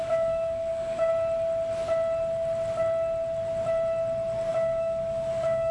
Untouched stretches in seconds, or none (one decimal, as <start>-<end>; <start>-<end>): 1.1-4.5